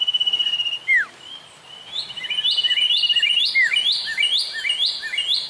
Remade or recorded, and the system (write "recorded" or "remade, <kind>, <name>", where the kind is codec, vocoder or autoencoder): recorded